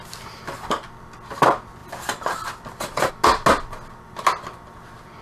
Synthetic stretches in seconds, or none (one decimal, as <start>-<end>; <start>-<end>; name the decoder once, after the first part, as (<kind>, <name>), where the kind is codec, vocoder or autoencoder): 1.8-3.1 (vocoder, BigVGAN v2)